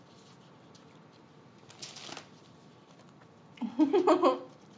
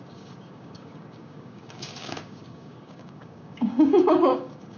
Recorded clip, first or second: first